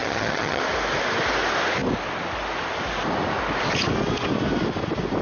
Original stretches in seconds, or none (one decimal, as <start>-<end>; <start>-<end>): 0.6-5.2